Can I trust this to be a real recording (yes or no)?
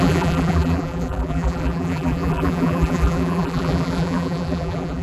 no